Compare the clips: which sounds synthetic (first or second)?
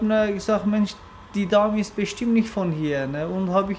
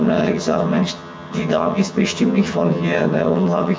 second